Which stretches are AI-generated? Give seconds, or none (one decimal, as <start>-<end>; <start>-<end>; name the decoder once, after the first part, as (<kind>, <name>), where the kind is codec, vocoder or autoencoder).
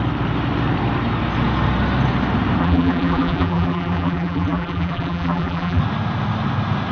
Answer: 2.6-5.8 (vocoder, BigVGAN v2)